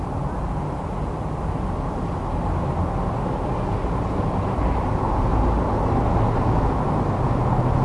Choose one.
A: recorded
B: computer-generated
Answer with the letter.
A